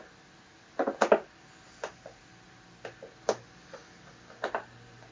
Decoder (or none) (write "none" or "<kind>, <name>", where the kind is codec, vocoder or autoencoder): none